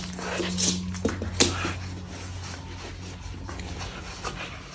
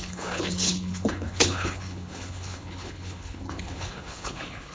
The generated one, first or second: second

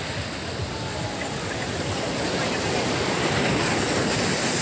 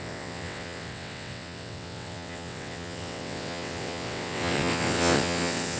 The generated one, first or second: second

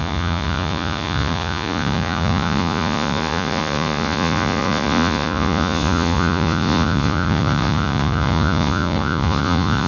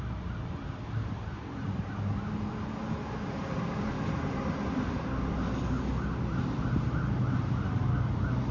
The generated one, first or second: first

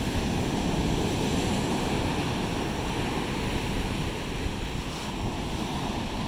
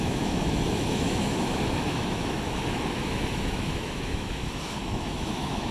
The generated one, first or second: second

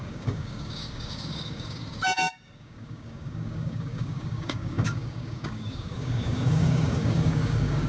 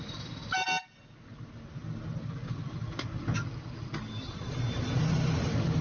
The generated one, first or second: first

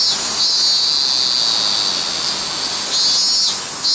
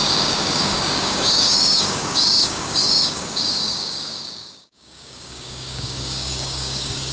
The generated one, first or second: second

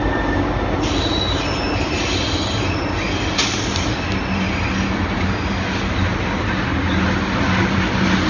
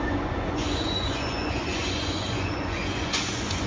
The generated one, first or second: second